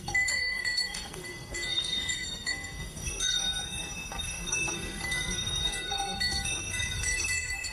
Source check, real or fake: fake